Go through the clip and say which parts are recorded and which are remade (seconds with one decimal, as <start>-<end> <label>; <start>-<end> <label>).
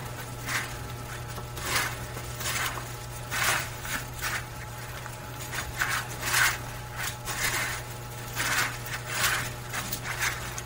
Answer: 0.0-3.5 recorded; 3.5-5.5 remade; 5.5-10.7 recorded